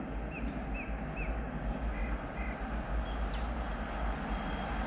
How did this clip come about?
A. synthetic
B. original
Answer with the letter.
B